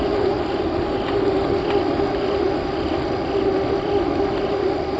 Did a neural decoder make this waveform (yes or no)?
no